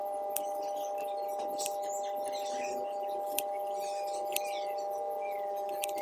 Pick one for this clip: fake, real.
real